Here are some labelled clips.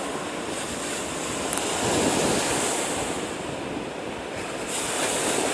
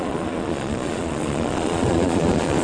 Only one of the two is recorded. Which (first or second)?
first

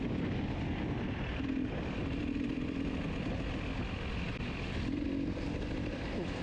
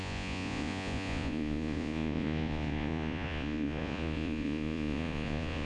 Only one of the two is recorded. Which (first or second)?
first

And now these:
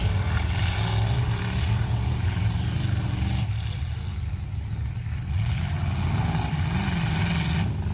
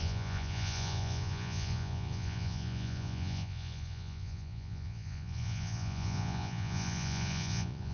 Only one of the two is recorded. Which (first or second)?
first